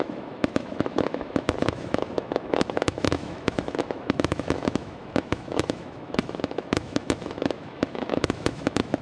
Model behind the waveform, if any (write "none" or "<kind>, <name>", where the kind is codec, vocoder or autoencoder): autoencoder, DAC-VAE